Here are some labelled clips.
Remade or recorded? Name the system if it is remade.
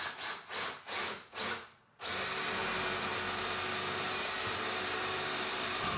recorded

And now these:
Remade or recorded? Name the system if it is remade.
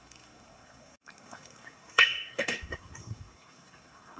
remade, codec, SNAC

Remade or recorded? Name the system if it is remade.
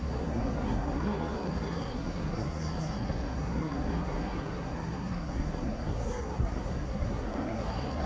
remade, codec, SNAC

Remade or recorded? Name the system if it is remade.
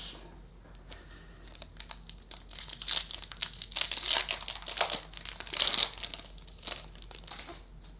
recorded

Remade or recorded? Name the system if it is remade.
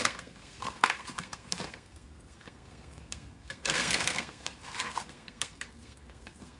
remade, codec, SNAC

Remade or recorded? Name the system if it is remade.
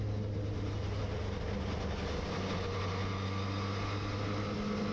recorded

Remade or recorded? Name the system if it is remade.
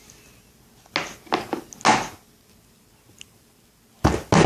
recorded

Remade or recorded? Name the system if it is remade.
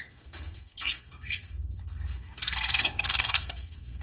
remade, codec, SNAC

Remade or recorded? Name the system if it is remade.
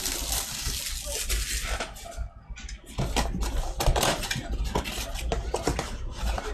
recorded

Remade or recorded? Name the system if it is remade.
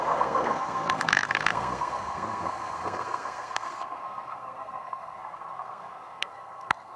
remade, codec, SNAC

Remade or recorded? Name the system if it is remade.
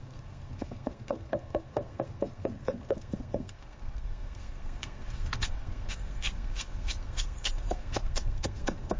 remade, codec, SNAC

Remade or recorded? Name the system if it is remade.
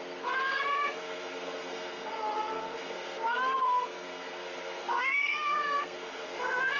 remade, codec, SNAC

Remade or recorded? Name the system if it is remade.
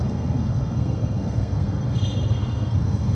remade, codec, SNAC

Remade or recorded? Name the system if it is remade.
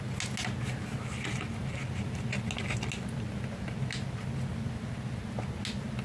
recorded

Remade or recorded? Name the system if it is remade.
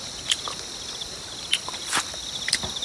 recorded